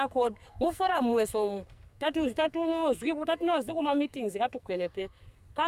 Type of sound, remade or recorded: remade